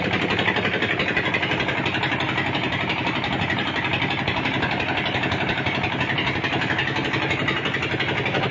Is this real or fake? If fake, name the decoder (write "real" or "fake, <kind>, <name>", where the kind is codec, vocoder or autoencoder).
real